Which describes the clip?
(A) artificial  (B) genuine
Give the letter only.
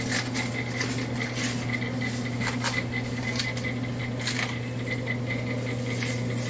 B